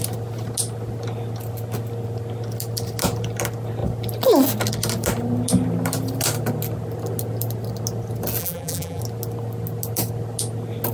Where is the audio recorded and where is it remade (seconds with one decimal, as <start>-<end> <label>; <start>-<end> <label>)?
0.0-8.4 recorded; 8.4-9.0 remade; 9.0-10.9 recorded

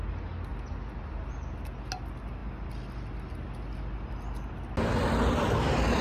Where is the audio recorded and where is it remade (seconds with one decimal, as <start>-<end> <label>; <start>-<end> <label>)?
0.0-6.0 recorded

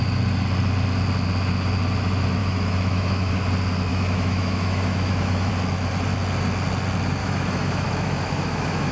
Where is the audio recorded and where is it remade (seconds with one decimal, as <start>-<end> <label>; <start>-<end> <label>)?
0.0-2.4 recorded; 2.4-3.3 remade; 3.3-3.9 recorded; 3.9-5.5 remade; 5.5-7.2 recorded; 7.2-8.9 remade

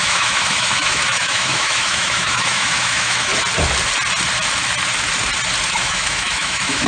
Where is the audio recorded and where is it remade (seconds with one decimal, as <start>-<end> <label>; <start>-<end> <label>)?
0.0-3.3 remade; 3.3-5.7 recorded; 5.7-6.9 remade

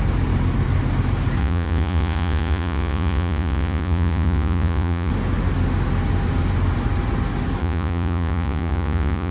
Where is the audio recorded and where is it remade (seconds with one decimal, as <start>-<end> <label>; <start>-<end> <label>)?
0.0-1.4 recorded; 1.4-5.1 remade; 5.1-7.6 recorded; 7.6-9.3 remade

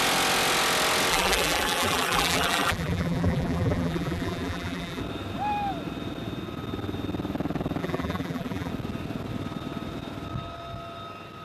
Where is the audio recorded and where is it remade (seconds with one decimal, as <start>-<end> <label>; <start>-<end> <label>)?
0.0-1.1 recorded; 1.1-5.0 remade; 5.0-7.8 recorded; 7.8-8.7 remade; 8.7-11.4 recorded

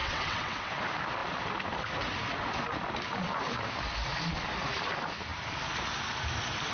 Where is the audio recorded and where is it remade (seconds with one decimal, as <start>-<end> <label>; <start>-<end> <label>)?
0.0-0.7 remade; 0.7-6.7 recorded